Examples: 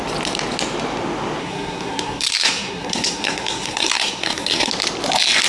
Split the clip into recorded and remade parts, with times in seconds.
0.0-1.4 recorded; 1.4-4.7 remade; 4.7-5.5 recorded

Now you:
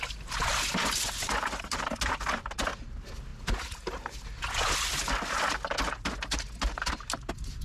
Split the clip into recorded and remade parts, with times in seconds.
0.0-7.6 recorded

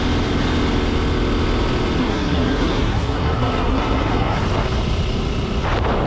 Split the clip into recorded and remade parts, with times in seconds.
0.0-2.0 recorded; 2.0-4.4 remade; 4.4-6.1 recorded